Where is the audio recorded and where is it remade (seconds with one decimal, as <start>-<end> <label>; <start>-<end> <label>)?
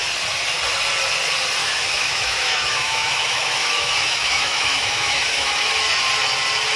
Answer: 0.0-1.6 recorded; 1.6-5.7 remade; 5.7-6.8 recorded